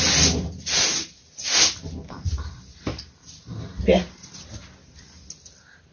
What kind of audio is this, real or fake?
real